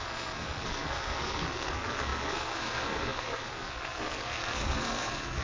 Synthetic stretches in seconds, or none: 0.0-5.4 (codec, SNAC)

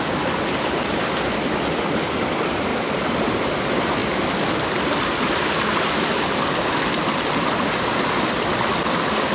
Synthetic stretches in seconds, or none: none